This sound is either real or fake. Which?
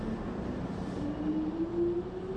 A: real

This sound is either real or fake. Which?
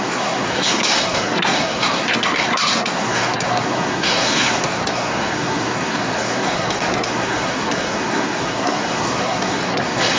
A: fake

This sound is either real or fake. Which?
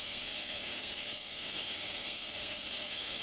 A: fake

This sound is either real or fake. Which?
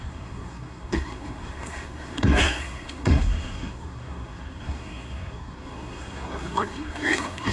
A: fake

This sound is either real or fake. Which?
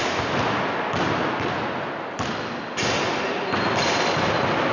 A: real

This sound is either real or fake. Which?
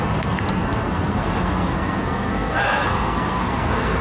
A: fake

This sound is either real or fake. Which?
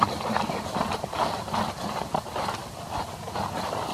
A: real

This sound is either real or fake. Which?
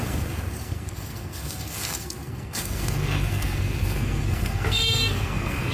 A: fake